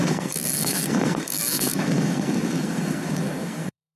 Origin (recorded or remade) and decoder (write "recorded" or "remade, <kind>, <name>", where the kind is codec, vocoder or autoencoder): remade, codec, SNAC